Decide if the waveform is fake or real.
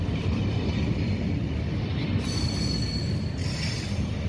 real